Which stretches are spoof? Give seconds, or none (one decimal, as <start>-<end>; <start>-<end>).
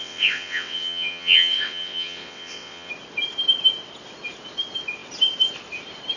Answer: 0.0-2.9